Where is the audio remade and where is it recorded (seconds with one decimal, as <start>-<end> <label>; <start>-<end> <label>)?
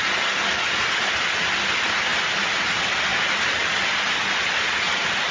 0.0-5.3 recorded